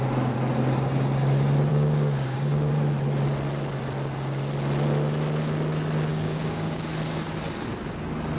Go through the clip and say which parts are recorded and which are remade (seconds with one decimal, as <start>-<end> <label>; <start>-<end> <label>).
0.0-1.7 recorded; 1.7-2.7 remade; 2.7-6.1 recorded; 6.1-6.8 remade; 6.8-8.4 recorded